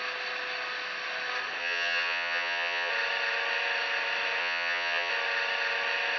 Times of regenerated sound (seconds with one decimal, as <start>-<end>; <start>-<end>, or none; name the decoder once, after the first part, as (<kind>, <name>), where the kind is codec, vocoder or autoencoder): 1.6-2.9 (vocoder, HiFi-GAN); 4.4-5.1